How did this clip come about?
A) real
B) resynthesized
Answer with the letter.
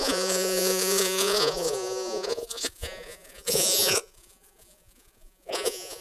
B